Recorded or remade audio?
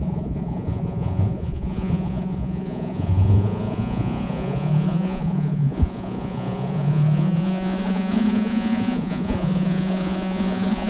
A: remade